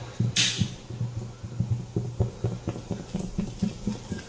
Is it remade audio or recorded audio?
recorded